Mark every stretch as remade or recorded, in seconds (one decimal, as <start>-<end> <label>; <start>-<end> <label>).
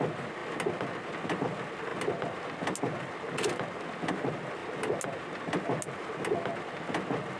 0.0-7.4 recorded